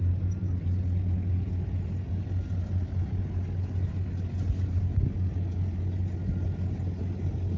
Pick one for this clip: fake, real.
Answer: real